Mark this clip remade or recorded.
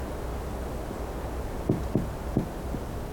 recorded